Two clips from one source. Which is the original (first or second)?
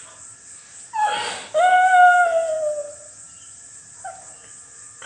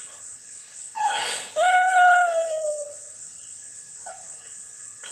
first